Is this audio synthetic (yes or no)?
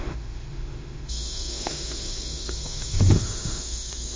yes